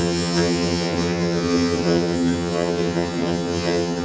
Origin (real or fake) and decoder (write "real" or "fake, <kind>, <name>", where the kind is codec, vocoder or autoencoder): fake, vocoder, HiFi-GAN